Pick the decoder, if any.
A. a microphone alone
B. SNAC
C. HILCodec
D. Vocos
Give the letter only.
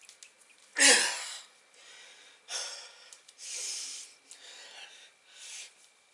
A